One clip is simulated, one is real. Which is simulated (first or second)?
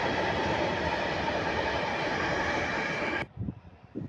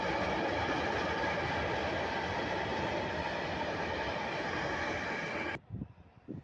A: first